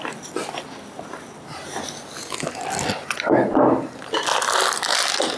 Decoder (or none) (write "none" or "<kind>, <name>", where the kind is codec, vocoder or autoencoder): none